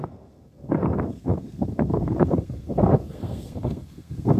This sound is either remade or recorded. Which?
remade